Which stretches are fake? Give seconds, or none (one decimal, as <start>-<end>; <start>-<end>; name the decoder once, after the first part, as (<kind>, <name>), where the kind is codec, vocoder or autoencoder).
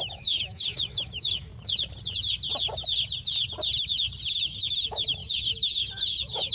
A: 0.0-1.5 (autoencoder, DAC-VAE); 4.3-6.5